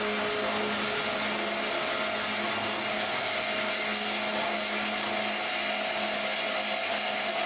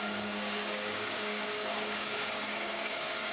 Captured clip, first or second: first